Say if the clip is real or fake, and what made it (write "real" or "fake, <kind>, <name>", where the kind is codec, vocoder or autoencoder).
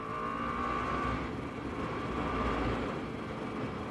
real